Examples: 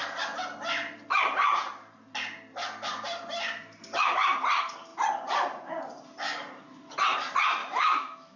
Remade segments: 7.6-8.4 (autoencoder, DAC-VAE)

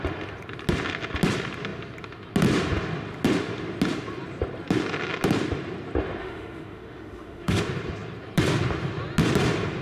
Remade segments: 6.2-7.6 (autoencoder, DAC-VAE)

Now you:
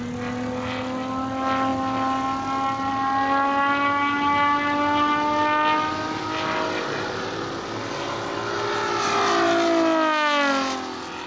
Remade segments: none

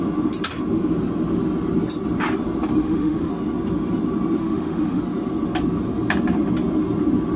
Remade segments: 2.8-3.3 (autoencoder, DAC-VAE); 4.4-5.0